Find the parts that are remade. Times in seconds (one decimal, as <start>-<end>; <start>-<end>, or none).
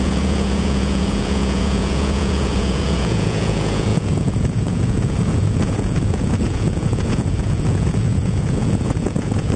0.0-9.6